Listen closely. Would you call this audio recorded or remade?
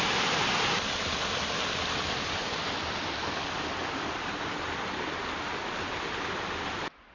recorded